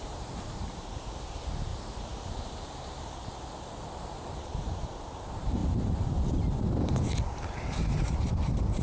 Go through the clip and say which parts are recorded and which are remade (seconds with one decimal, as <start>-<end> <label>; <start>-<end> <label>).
0.0-1.7 remade; 1.7-4.4 recorded; 4.4-5.6 remade; 5.6-7.3 recorded; 7.3-8.8 remade